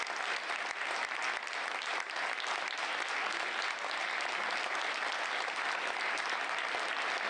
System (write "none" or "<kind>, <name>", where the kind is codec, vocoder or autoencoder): none